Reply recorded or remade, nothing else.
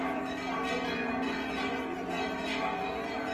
recorded